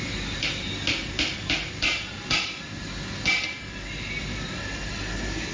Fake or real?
real